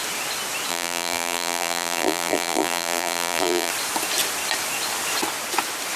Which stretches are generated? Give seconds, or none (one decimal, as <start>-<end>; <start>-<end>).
0.7-3.7